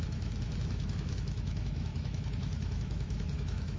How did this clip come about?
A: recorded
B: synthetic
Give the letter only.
B